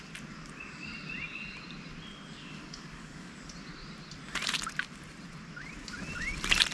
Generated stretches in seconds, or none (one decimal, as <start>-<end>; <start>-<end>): 2.4-3.3